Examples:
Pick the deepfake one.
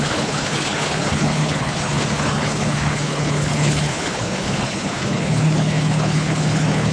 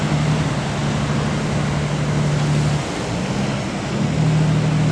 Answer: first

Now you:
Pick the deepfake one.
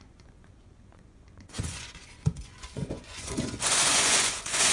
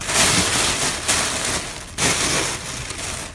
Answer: first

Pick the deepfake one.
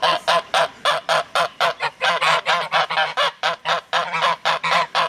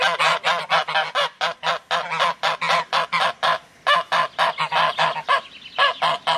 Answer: first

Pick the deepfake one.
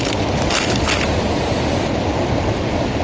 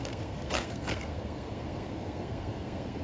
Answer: second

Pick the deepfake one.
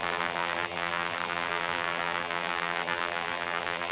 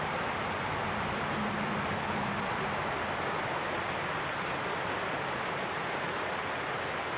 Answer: first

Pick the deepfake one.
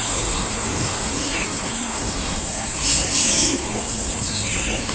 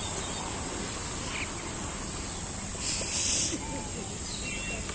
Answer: first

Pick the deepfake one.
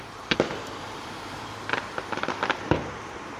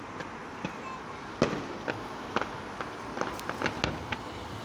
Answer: first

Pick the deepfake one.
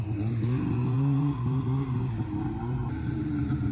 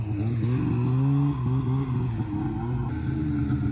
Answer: first